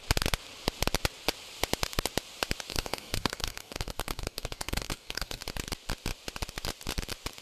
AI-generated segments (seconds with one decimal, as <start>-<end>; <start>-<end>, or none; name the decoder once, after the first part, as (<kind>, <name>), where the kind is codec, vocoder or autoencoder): 2.7-5.4 (codec, DAC)